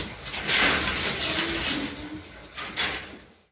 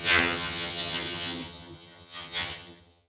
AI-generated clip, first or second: second